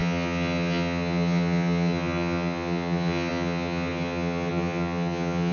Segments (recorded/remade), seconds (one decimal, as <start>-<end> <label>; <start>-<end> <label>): 0.0-5.5 remade